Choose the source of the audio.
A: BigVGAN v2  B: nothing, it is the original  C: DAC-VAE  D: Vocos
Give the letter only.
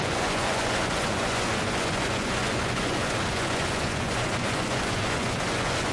D